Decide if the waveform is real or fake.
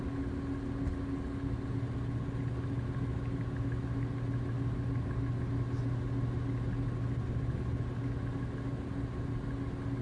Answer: real